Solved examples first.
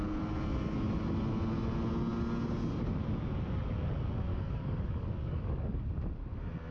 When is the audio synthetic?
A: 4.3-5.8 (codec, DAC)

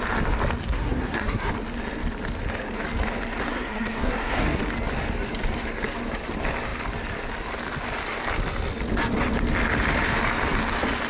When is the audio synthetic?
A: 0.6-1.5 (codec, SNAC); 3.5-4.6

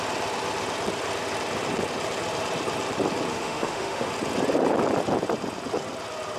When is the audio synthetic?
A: 3.3-4.1 (autoencoder, DAC-VAE)

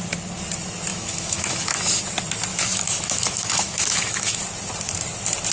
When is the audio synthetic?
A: 0.9-2.0 (autoencoder, DAC-VAE); 2.5-4.4

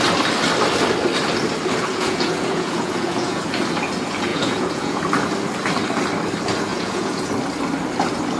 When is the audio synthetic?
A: 1.9-3.4 (vocoder, Vocos); 4.3-5.0; 6.7-7.3